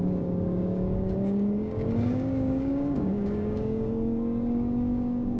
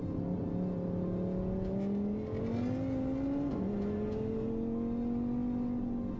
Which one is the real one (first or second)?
second